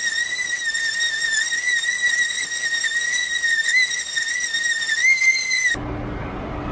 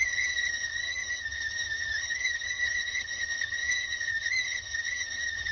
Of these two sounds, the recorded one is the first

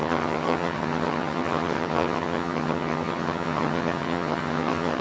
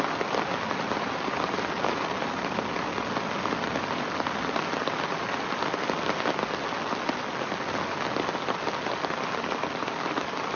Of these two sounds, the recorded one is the second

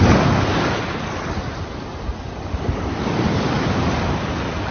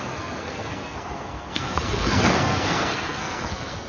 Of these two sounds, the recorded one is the first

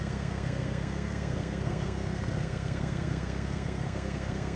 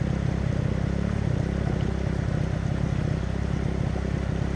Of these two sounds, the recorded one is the second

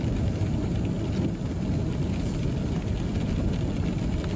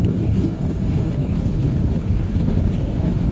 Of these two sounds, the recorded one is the first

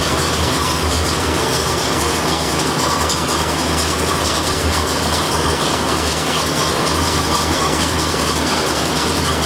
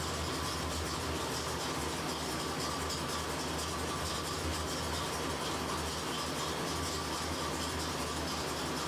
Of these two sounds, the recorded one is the second